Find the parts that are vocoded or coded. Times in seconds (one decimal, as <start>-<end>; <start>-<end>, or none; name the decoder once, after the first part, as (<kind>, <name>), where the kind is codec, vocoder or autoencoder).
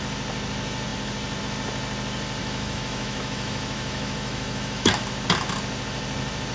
2.4-5.0 (autoencoder, DAC-VAE)